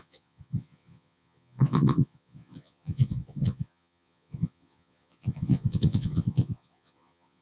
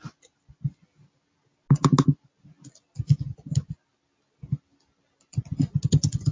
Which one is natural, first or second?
second